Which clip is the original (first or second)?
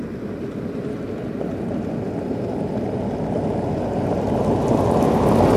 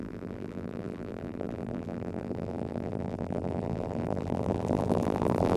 first